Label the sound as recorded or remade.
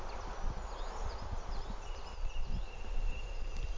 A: recorded